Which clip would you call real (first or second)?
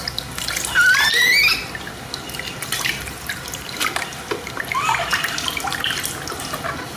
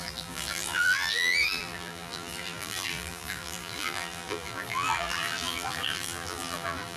first